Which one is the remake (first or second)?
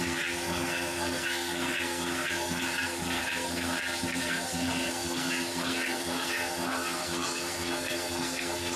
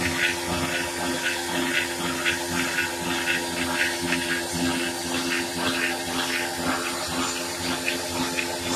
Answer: first